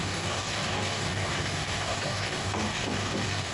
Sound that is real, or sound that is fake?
fake